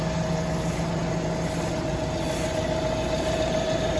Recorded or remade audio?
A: recorded